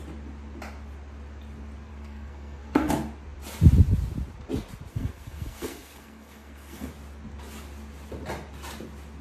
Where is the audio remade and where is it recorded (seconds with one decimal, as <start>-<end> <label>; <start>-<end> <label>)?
0.0-1.9 recorded; 1.9-2.9 remade; 2.9-4.9 recorded; 4.9-6.9 remade; 6.9-9.2 recorded